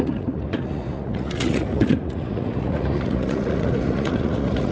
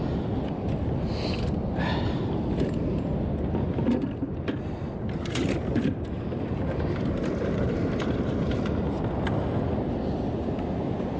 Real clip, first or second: second